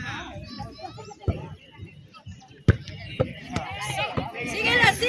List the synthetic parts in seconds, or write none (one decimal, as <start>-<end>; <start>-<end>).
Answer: 0.0-1.8